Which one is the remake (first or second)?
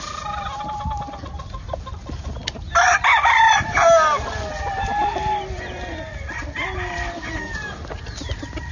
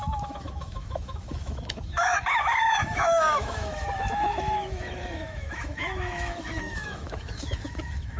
second